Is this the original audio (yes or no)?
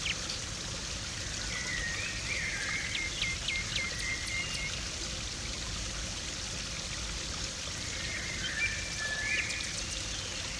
yes